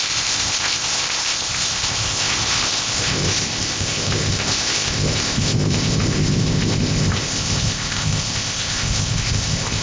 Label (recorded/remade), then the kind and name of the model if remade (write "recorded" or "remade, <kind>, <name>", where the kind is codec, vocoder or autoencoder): remade, codec, ZipCodec